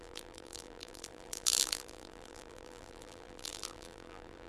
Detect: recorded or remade remade